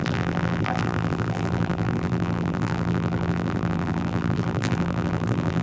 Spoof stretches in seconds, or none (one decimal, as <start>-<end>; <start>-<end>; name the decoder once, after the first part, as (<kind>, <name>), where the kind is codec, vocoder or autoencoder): 0.0-5.6 (vocoder, BigVGAN v2)

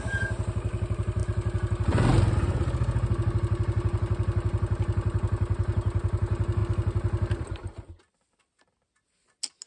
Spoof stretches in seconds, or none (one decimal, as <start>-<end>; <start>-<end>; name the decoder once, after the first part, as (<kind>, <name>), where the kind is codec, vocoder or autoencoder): none

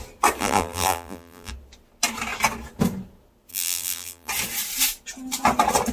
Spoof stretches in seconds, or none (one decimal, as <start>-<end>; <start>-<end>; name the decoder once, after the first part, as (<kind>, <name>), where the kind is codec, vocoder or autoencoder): 0.4-1.5 (vocoder, BigVGAN v2); 3.5-4.3

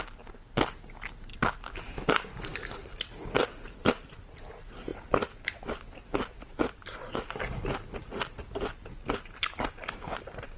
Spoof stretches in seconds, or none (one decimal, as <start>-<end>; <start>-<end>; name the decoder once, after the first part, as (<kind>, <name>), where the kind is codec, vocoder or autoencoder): none

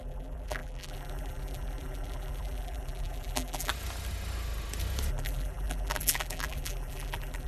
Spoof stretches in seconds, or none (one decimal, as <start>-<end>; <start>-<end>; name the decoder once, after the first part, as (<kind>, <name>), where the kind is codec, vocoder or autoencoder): 0.0-3.7 (vocoder, BigVGAN v2); 5.1-7.5